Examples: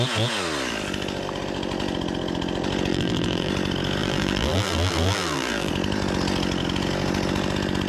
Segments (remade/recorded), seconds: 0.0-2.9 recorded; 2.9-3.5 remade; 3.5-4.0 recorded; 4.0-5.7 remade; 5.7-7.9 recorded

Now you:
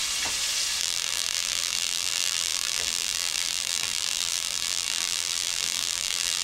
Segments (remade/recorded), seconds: 0.0-0.8 recorded; 0.8-6.4 remade

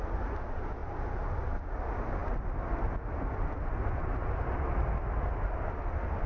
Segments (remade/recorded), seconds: 0.0-0.8 recorded; 0.8-1.8 remade; 1.8-6.3 recorded

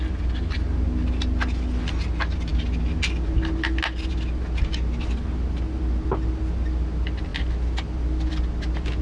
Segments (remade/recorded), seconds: 0.0-9.0 recorded

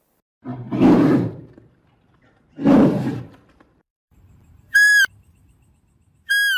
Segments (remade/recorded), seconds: 0.0-0.5 recorded; 0.5-2.2 remade; 2.2-2.7 recorded; 2.7-5.7 remade; 5.7-6.6 recorded

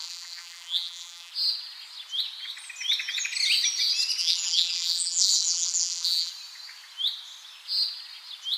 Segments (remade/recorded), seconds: 0.0-1.3 remade; 1.3-4.2 recorded; 4.2-6.3 remade; 6.3-8.6 recorded

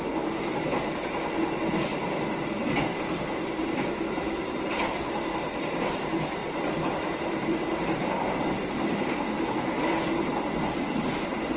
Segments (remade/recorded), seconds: 0.0-2.0 recorded; 2.0-5.9 remade; 5.9-6.4 recorded; 6.4-11.1 remade; 11.1-11.6 recorded